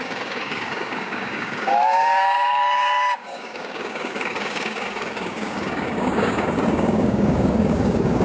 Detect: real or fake fake